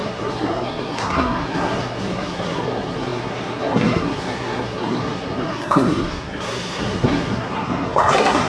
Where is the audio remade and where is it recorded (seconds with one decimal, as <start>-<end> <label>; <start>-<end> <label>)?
0.0-8.5 remade